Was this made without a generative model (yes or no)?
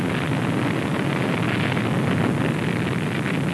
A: yes